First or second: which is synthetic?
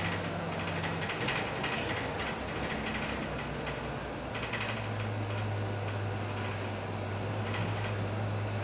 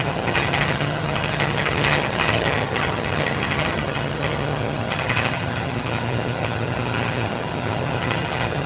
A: second